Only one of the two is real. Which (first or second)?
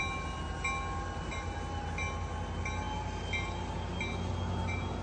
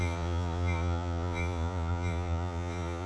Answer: first